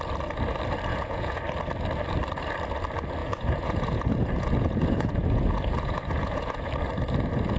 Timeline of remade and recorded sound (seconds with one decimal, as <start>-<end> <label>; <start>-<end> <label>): 0.0-0.9 recorded; 0.9-1.4 remade; 1.4-3.2 recorded; 3.2-6.7 remade; 6.7-7.6 recorded